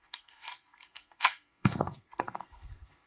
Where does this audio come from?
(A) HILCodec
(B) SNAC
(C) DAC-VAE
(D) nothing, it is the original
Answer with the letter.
B